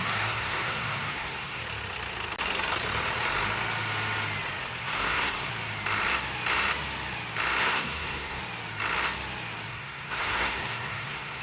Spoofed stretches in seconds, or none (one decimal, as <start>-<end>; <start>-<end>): 0.0-1.6; 4.8-5.5; 7.6-8.4; 9.7-11.4